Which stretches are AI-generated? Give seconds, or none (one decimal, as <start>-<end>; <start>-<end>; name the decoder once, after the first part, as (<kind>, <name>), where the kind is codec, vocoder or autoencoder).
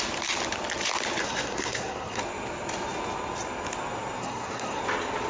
1.2-2.2 (codec, SNAC); 4.2-4.8